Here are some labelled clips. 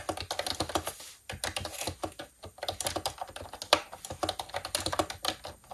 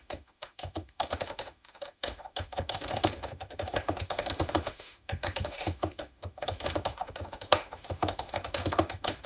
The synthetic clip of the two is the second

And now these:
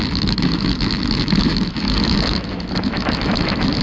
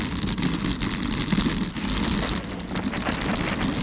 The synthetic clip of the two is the first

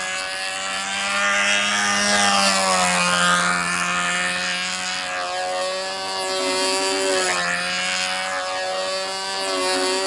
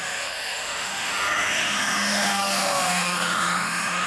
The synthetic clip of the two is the second